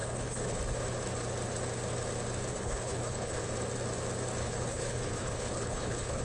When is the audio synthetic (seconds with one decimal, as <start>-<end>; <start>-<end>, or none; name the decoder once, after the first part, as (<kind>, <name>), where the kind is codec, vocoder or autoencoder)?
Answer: 0.0-0.6 (codec, HILCodec); 2.5-3.4; 4.4-6.2